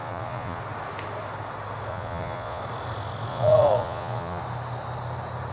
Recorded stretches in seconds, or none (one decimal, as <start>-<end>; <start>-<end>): 0.6-1.9; 2.6-3.3; 4.4-5.5